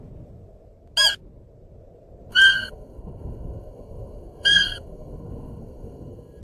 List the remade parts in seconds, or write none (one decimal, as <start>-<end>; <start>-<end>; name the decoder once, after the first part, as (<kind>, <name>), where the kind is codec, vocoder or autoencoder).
2.3-6.4 (codec, SNAC)